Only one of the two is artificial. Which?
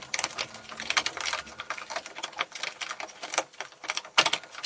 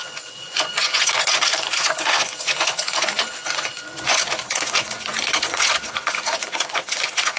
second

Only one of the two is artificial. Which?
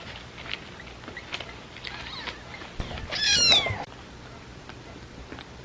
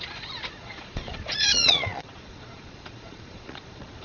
second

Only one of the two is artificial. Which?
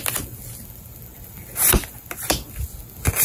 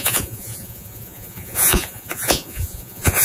second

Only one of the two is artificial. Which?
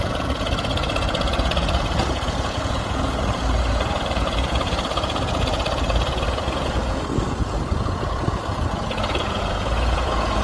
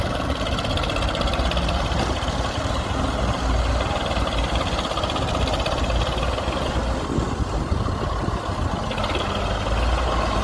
first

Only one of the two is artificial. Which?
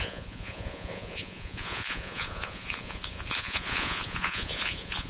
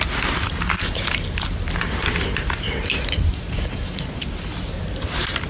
first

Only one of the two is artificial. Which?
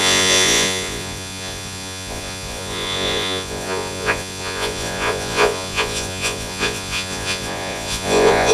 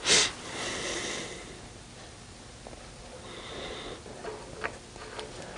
first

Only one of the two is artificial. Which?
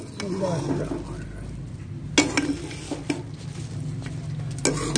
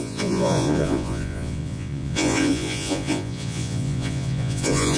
second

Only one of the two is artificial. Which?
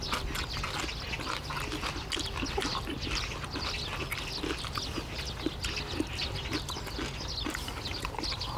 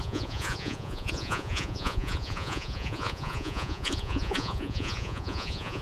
second